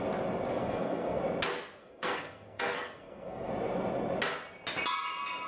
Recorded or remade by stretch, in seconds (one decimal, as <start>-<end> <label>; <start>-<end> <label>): 0.0-0.6 recorded; 0.6-1.2 remade; 1.2-1.8 recorded; 1.8-3.5 remade; 3.5-5.5 recorded

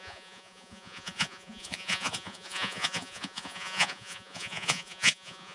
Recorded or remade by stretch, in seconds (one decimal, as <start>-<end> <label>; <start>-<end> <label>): 0.0-5.5 remade

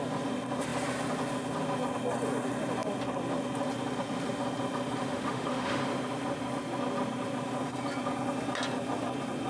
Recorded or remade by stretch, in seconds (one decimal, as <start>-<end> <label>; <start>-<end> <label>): 0.0-5.0 recorded; 5.0-5.8 remade; 5.8-9.5 recorded

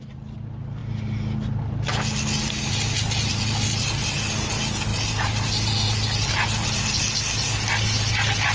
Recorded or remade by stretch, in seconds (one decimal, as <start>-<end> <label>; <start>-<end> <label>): 0.0-8.5 recorded